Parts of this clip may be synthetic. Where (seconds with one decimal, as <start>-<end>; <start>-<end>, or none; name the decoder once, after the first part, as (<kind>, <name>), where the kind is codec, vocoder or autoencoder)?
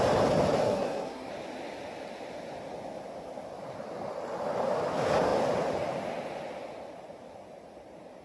0.6-1.3 (codec, SNAC)